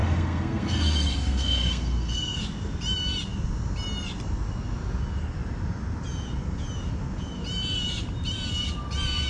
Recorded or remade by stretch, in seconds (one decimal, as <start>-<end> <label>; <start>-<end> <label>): 0.0-2.4 remade; 2.4-9.3 recorded